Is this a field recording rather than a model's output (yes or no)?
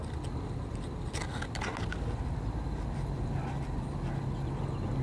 yes